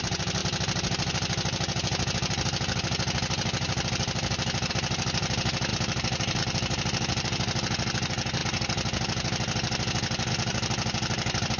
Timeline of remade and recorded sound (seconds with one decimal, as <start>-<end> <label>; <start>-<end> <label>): 0.0-5.7 recorded; 5.7-6.4 remade; 6.4-11.6 recorded